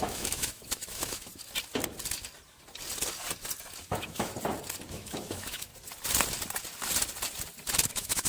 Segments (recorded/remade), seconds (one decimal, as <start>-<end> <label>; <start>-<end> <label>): 0.0-1.3 remade; 1.3-3.8 recorded; 3.8-4.3 remade; 4.3-4.9 recorded; 4.9-5.7 remade; 5.7-7.9 recorded; 7.9-8.3 remade